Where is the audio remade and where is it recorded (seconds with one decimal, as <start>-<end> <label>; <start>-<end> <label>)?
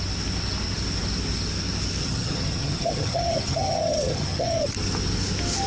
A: 0.0-2.0 recorded; 2.0-4.7 remade; 4.7-5.7 recorded